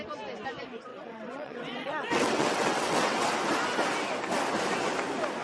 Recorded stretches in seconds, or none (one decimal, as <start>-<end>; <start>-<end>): 0.0-0.9; 3.3-5.4